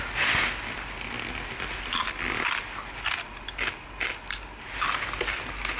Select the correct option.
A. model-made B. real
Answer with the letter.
B